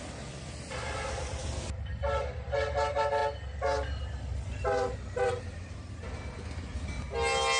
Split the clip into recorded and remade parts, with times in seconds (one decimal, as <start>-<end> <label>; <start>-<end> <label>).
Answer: 0.0-7.6 recorded